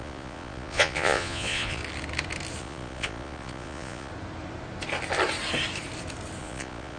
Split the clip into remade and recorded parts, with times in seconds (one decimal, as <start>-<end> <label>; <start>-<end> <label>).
0.0-1.8 remade; 1.8-2.6 recorded; 2.6-4.1 remade; 4.1-6.4 recorded; 6.4-7.0 remade